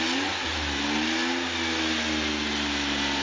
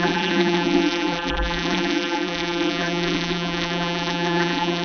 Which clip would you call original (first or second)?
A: first